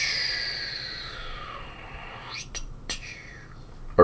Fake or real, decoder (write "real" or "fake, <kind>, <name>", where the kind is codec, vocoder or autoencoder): fake, vocoder, BigVGAN v2